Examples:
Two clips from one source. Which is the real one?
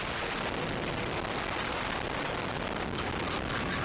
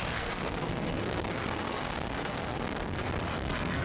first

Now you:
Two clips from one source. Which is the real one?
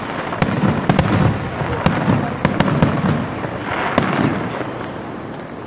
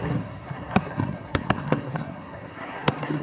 first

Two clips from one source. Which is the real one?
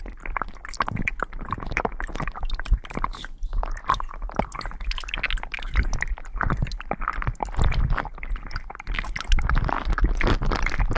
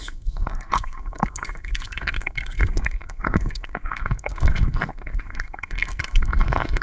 first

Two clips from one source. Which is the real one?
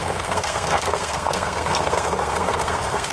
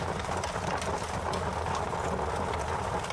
second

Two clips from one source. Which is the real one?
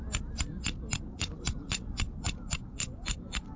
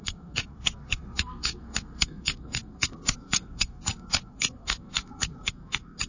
first